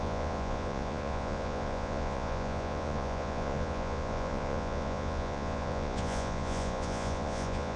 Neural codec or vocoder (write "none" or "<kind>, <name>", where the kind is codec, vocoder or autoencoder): vocoder, Vocos